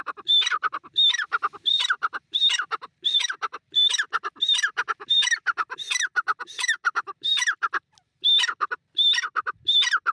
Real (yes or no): yes